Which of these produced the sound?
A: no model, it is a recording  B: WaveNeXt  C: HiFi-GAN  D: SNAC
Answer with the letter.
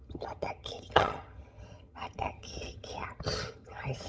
C